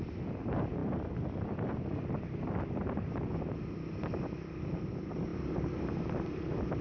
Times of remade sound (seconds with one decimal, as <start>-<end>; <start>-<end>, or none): none